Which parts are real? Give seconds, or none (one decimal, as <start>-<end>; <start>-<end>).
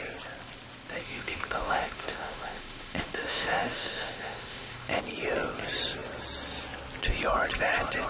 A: 0.0-1.0; 5.0-8.1